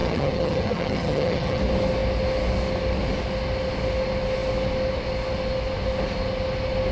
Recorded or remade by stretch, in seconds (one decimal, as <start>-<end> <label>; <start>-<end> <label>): 0.0-1.6 remade; 1.6-6.9 recorded

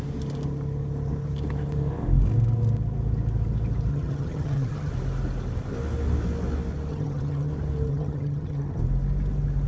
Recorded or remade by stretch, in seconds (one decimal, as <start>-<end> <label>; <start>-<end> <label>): 0.0-3.9 recorded; 3.9-4.9 remade; 4.9-6.9 recorded; 6.9-7.5 remade; 7.5-7.9 recorded; 7.9-8.8 remade; 8.8-9.7 recorded